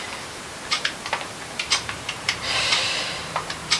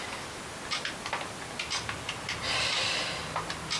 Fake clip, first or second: first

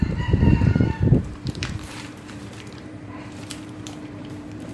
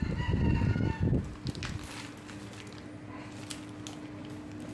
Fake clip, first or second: first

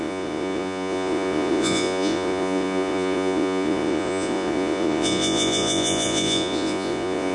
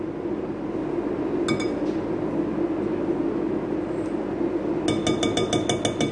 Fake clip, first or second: first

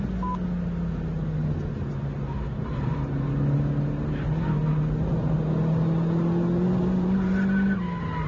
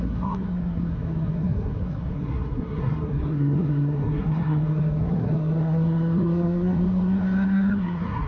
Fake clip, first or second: second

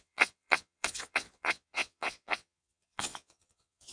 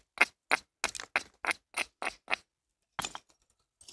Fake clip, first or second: first